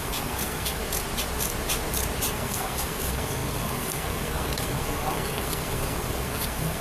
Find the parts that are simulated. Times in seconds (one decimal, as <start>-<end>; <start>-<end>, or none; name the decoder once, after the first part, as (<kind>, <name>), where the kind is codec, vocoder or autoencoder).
0.0-0.8 (codec, SNAC); 2.3-6.8